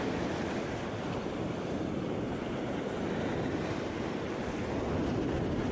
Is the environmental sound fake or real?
real